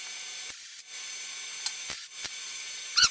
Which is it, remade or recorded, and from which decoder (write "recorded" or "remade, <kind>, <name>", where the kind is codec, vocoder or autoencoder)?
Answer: recorded